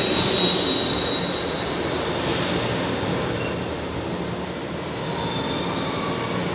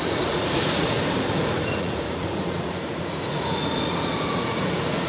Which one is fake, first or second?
second